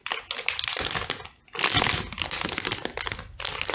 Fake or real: real